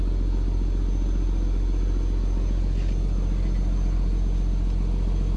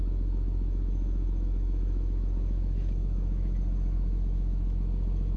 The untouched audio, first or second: first